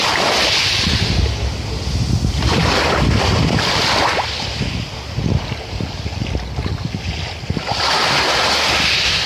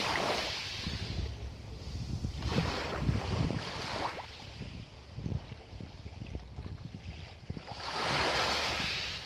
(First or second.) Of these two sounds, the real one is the first